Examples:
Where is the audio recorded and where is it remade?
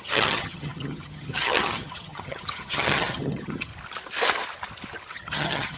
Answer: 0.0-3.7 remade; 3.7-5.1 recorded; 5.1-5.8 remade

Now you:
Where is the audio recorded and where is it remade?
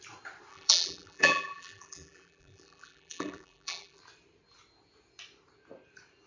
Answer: 0.0-0.5 recorded; 0.5-4.0 remade; 4.0-6.3 recorded